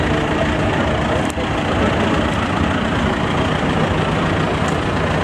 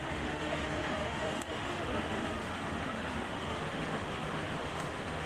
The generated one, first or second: second